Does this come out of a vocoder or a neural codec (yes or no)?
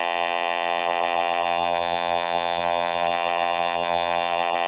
yes